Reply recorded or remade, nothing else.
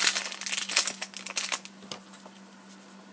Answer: recorded